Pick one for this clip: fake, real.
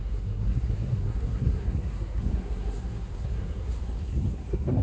fake